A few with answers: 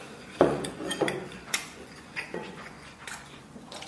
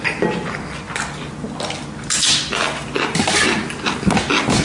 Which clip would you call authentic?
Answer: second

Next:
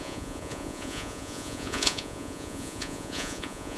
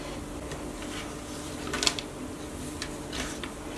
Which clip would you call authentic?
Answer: second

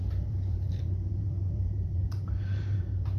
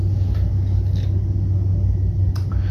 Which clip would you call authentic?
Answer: second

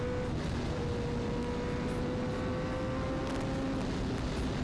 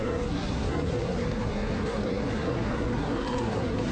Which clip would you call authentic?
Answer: first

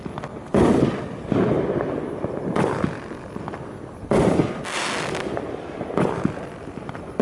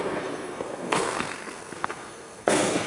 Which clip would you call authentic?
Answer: first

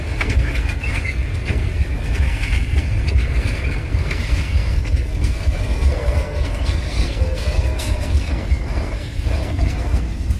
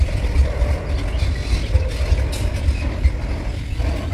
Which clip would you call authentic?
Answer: second